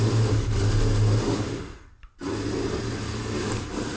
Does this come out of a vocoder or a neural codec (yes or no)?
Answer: no